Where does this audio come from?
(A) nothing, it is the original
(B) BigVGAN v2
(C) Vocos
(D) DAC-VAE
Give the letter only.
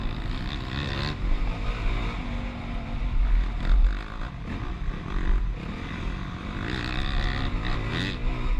A